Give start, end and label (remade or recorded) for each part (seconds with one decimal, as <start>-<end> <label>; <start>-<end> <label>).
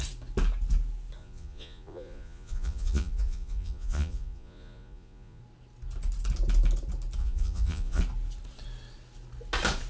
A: 0.0-1.2 recorded; 1.2-5.4 remade; 5.4-7.2 recorded; 7.2-8.0 remade; 8.0-9.9 recorded